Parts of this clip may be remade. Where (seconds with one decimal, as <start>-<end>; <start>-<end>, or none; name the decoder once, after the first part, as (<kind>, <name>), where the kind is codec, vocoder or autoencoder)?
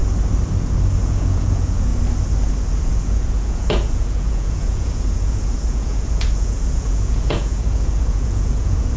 1.0-1.9 (vocoder, Vocos); 2.7-9.0